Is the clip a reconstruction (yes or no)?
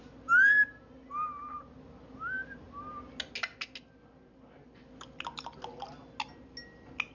no